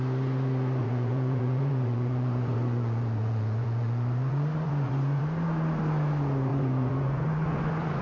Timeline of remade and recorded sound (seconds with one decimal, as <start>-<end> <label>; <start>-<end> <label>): 0.0-0.8 recorded; 0.8-5.2 remade; 5.2-6.5 recorded; 6.5-8.0 remade